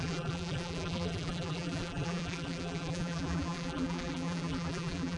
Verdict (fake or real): fake